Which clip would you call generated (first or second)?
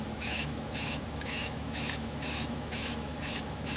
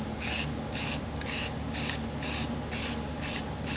first